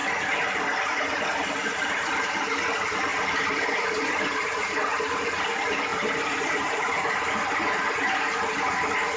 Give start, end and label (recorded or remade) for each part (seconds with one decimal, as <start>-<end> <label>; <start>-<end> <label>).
0.0-3.1 recorded; 3.1-4.9 remade; 4.9-5.9 recorded; 5.9-6.9 remade; 6.9-9.2 recorded